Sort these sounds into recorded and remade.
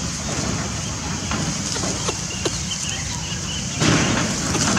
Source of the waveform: recorded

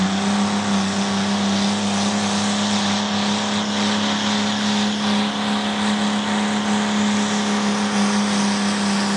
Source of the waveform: recorded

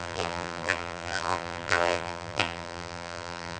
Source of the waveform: remade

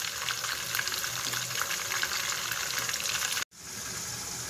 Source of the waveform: recorded